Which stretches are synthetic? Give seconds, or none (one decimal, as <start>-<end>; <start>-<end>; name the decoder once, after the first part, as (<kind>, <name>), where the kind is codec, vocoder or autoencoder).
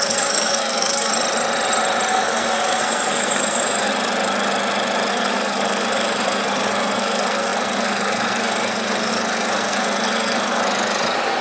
0.0-1.1 (codec, SNAC); 2.1-3.9; 5.1-10.6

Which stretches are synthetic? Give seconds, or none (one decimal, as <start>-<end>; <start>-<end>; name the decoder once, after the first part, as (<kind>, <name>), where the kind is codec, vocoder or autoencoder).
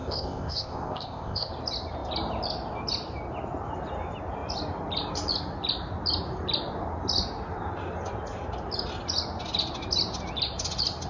0.0-1.5 (codec, ZipCodec)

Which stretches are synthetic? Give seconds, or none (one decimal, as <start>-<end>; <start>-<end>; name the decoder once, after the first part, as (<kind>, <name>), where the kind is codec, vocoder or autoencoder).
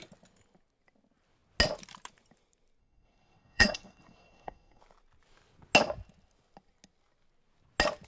2.8-4.8 (codec, SNAC)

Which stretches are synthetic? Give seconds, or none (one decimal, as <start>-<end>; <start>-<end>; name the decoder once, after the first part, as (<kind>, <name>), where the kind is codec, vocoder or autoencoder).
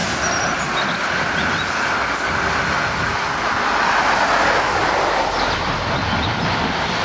none